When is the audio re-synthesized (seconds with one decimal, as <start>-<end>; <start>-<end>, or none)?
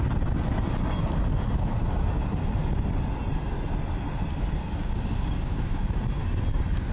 4.6-6.0